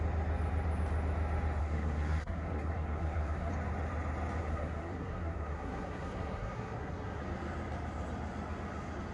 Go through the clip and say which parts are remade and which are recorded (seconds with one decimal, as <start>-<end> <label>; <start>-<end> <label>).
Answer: 0.0-1.6 recorded; 1.6-3.5 remade; 3.5-4.4 recorded; 4.4-7.2 remade; 7.2-9.1 recorded